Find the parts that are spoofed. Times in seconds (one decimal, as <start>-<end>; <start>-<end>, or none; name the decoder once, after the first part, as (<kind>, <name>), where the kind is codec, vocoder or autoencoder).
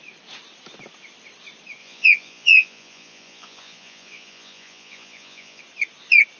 1.8-5.6 (vocoder, Vocos)